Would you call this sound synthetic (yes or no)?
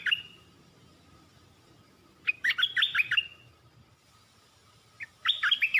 no